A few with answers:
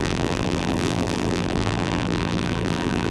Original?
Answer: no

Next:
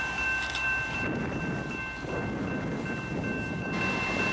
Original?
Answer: yes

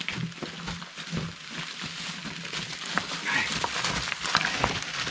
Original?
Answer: yes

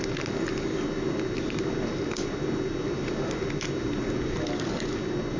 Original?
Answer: yes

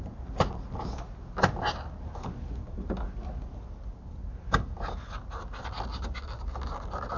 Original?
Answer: yes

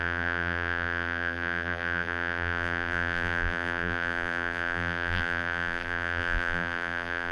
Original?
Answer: no